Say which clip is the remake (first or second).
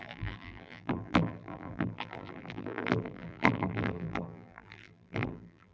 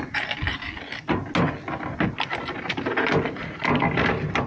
first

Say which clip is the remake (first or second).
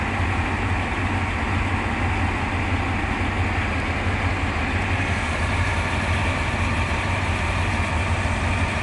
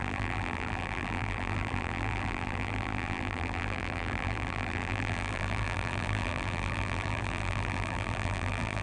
second